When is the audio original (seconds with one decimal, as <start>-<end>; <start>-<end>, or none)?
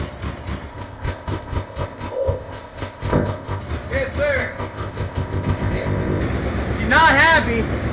0.0-0.7; 3.6-4.4; 6.2-7.9